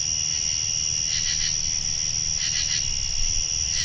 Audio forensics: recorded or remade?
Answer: recorded